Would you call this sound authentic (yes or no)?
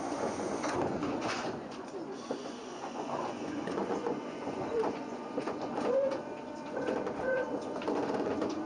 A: no